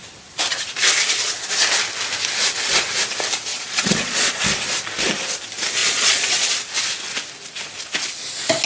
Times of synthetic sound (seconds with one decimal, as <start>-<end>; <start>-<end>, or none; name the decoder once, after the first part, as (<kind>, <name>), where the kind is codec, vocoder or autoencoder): 3.5-4.4 (vocoder, Vocos); 5.8-6.5